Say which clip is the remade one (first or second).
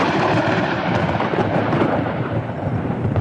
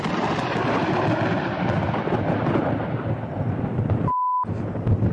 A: first